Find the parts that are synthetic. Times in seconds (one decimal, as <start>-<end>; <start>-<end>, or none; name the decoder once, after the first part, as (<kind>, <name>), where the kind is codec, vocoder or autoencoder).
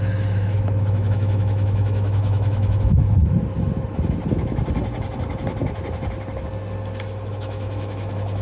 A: 0.0-3.2 (autoencoder, DAC-VAE); 7.3-8.4